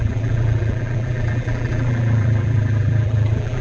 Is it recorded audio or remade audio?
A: remade